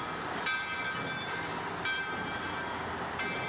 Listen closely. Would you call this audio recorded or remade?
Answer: recorded